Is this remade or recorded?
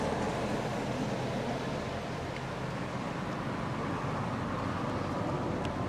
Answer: recorded